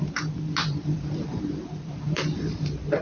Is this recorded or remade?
remade